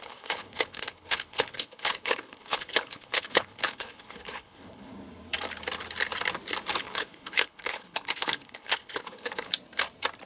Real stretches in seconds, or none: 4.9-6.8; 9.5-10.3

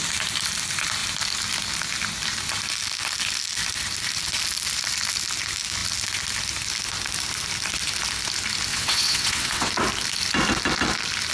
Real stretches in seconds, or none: 0.0-8.7; 9.7-11.3

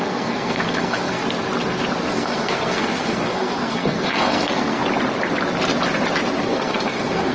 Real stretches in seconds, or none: 1.2-2.1; 4.8-6.4

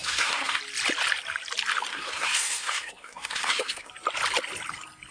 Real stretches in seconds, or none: 0.6-1.9; 3.9-5.1

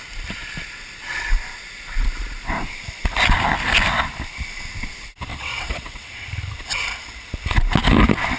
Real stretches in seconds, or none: 0.0-5.3; 6.1-8.4

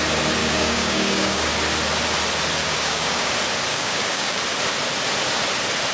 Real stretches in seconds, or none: 0.0-0.4; 1.5-2.6; 3.3-3.7; 4.4-5.9